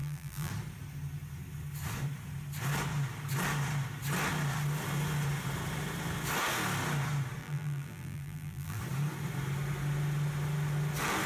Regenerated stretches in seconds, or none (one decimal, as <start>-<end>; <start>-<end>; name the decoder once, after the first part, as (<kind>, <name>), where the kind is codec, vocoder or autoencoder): 0.0-0.5 (vocoder, BigVGAN v2); 7.4-8.8